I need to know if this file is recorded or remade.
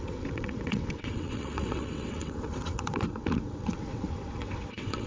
remade